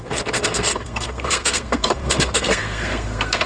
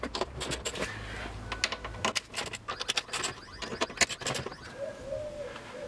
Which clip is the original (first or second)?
second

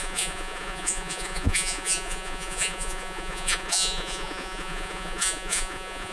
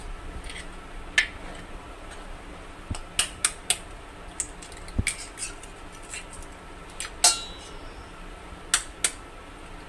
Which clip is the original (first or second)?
second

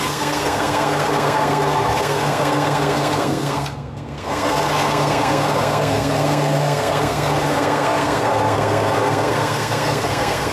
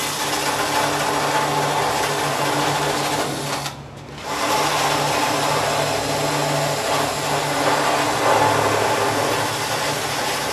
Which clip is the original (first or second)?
second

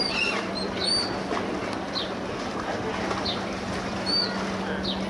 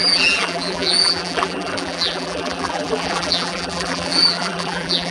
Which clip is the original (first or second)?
first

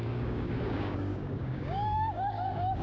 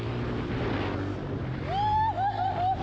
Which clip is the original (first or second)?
second